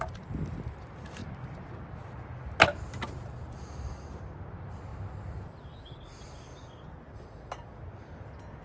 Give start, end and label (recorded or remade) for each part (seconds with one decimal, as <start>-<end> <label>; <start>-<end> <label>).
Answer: 0.0-8.6 recorded